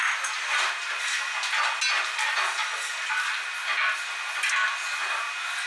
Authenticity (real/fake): real